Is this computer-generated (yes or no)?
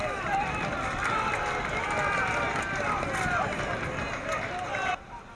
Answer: no